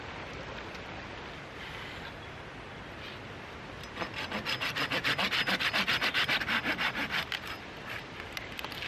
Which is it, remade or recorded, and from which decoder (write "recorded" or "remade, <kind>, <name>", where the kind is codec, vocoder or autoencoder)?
recorded